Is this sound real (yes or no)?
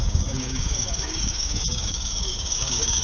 no